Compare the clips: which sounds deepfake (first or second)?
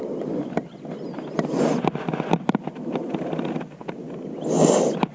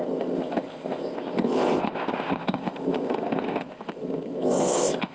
second